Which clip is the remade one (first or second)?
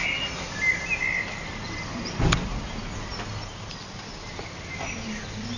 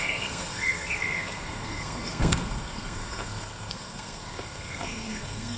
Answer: second